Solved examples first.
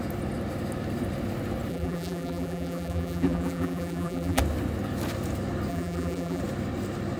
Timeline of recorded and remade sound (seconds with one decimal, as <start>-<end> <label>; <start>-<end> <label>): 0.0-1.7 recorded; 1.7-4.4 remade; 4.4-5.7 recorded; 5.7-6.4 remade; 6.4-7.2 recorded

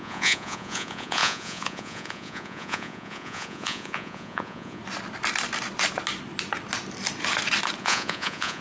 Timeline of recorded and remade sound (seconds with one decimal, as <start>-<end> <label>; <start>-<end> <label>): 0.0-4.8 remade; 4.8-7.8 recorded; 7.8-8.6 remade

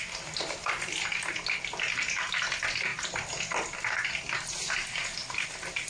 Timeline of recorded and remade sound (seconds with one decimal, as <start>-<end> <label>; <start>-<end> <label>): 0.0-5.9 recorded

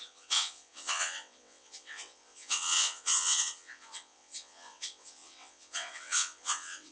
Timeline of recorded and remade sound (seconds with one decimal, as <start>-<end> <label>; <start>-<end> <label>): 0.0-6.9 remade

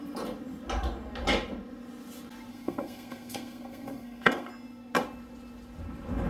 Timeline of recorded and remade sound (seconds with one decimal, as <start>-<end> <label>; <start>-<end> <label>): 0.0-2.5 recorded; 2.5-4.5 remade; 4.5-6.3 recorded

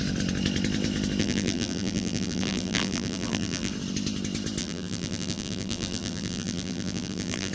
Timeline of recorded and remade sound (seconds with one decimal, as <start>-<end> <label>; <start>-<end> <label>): 0.0-1.2 recorded; 1.2-3.7 remade; 3.7-4.6 recorded; 4.6-7.5 remade

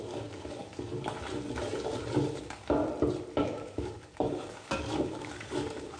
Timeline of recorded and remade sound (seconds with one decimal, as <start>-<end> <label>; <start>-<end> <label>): 0.0-0.9 remade; 0.9-2.4 recorded; 2.4-2.8 remade; 2.8-3.4 recorded; 3.4-6.0 remade